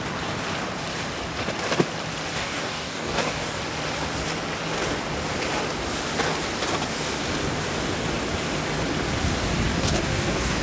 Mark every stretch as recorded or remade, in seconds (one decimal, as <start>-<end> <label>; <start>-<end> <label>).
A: 0.0-2.3 recorded; 2.3-3.6 remade; 3.6-9.7 recorded; 9.7-10.6 remade